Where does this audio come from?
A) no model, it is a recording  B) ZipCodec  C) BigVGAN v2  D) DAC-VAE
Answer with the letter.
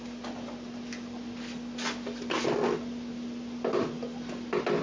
A